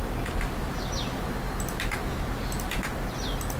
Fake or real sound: real